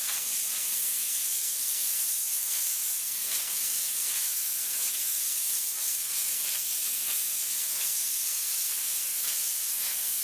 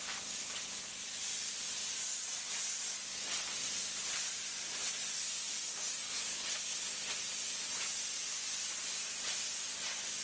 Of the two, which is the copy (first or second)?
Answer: first